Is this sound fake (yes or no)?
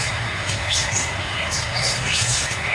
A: yes